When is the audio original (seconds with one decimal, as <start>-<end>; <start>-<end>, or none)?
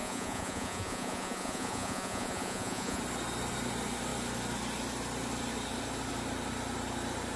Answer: 3.0-7.4